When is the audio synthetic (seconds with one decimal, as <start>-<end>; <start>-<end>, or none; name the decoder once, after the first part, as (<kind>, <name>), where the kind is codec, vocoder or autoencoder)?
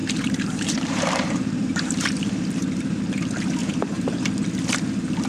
0.0-3.0 (vocoder, BigVGAN v2); 3.6-4.3